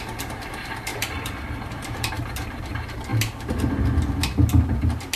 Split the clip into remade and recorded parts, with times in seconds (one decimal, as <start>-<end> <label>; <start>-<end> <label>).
0.0-0.9 recorded; 0.9-2.1 remade; 2.1-5.2 recorded